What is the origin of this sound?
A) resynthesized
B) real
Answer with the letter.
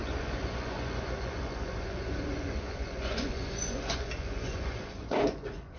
A